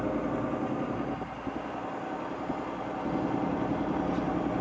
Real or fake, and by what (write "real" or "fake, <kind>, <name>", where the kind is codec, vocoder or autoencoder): real